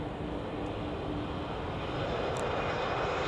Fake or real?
real